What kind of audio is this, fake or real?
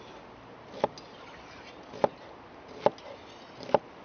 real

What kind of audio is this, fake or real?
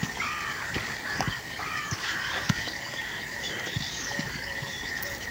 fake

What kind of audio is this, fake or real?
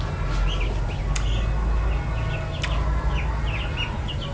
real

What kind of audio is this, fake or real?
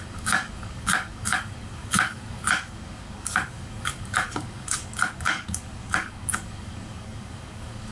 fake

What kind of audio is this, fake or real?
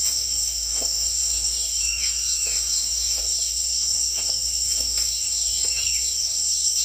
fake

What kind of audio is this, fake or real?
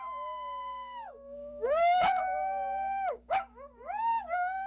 fake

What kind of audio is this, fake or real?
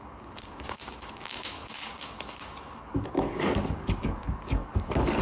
fake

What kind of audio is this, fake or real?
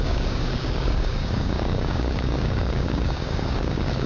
fake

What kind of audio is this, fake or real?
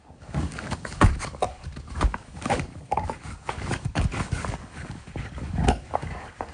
fake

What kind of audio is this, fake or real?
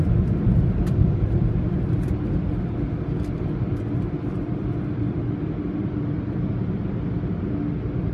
real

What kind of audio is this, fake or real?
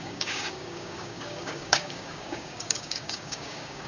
fake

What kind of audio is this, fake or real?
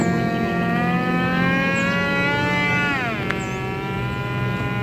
real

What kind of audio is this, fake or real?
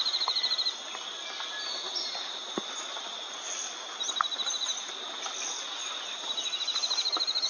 real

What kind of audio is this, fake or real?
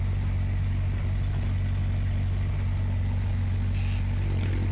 real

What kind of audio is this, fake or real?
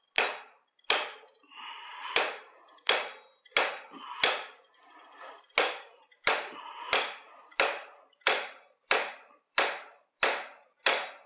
real